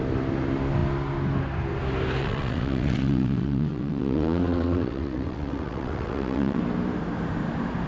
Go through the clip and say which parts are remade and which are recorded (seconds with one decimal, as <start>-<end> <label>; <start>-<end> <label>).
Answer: 0.0-2.2 recorded; 2.2-6.6 remade; 6.6-7.9 recorded